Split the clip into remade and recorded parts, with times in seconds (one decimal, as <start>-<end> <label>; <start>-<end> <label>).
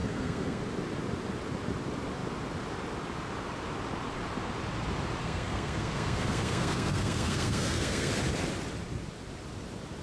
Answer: 0.0-0.6 remade; 0.6-5.2 recorded; 5.2-8.1 remade; 8.1-10.0 recorded